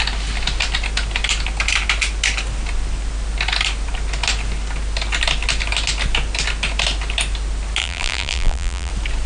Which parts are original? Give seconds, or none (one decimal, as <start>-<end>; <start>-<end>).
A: 0.0-7.8; 8.9-9.3